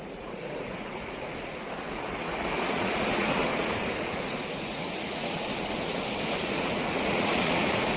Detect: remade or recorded remade